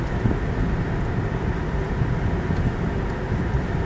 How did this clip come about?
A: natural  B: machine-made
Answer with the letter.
A